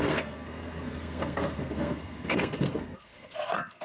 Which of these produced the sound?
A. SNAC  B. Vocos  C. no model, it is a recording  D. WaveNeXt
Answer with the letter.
A